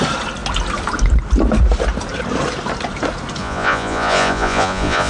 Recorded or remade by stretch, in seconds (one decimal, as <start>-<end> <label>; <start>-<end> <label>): 0.0-3.4 recorded; 3.4-5.1 remade

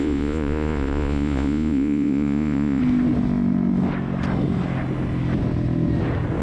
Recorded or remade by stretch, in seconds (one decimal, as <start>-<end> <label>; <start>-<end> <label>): 0.0-2.8 remade; 2.8-6.4 recorded